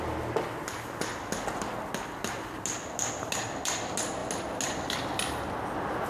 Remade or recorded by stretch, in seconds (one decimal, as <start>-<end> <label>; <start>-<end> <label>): 0.0-6.1 recorded